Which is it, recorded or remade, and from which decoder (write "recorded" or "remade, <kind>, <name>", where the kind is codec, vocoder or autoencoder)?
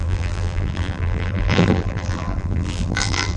remade, vocoder, BigVGAN v2